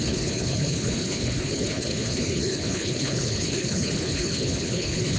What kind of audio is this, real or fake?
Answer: fake